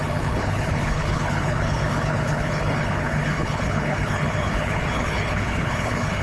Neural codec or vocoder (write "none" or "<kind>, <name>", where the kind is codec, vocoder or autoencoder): codec, HILCodec